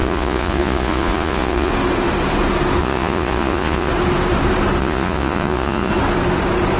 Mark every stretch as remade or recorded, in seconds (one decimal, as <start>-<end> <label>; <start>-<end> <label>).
0.0-1.7 remade; 1.7-2.8 recorded; 2.8-3.9 remade; 3.9-4.8 recorded; 4.8-5.9 remade; 5.9-6.8 recorded